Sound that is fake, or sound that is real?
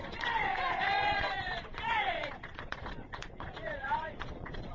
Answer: fake